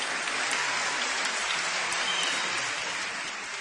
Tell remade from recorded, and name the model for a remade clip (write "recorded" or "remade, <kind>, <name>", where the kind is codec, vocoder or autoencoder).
remade, vocoder, BigVGAN v2